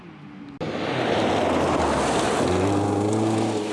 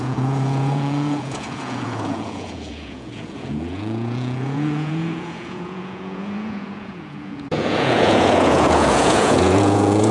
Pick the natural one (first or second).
first